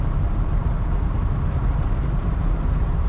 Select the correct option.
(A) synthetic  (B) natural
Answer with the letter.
A